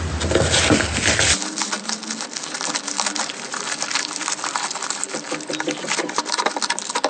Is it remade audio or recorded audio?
recorded